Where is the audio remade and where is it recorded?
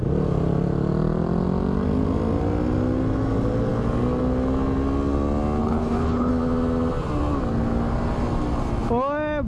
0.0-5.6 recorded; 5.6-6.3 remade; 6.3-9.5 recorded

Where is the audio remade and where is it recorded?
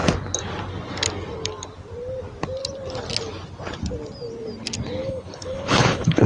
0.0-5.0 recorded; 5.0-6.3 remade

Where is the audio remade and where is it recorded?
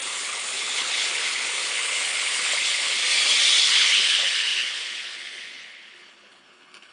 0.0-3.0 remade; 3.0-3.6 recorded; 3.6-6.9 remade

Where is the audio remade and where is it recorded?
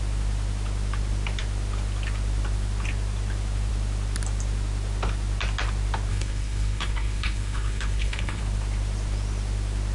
0.0-6.1 recorded; 6.1-8.4 remade; 8.4-9.9 recorded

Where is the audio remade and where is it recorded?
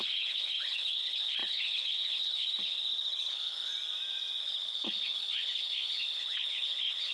0.0-3.7 remade; 3.7-4.4 recorded; 4.4-7.1 remade